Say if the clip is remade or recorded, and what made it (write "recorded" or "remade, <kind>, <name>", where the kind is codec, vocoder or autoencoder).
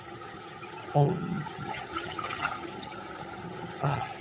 remade, vocoder, HiFi-GAN